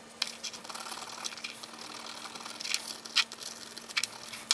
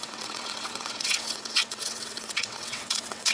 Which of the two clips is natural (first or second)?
first